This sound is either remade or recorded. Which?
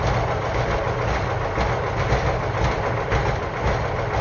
recorded